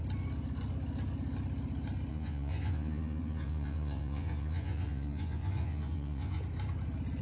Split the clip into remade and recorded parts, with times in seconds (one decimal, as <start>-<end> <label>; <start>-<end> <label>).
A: 0.0-2.1 recorded; 2.1-6.4 remade; 6.4-7.2 recorded